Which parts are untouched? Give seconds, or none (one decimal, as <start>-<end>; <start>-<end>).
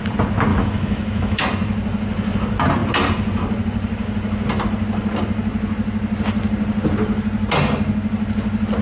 0.0-0.5; 1.4-8.8